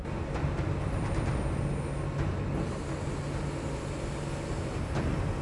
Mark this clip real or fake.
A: real